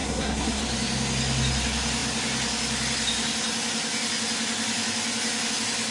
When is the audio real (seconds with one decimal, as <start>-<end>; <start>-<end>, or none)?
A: 0.6-5.9